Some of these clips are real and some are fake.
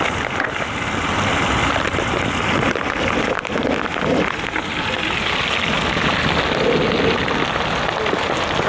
real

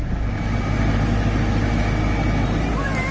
real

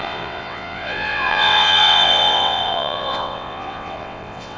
fake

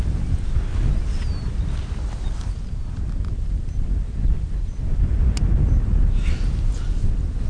real